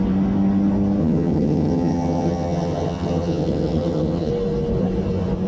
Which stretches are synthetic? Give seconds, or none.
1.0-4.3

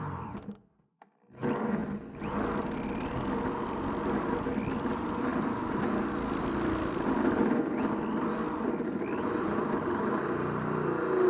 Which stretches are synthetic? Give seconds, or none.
none

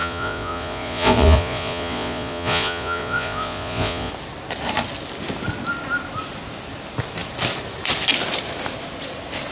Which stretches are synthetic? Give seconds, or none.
0.0-4.1